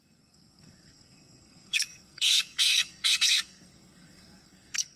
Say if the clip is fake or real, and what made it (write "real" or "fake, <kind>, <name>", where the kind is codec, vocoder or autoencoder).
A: fake, codec, SNAC